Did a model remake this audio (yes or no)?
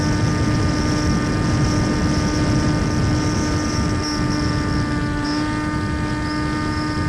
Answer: no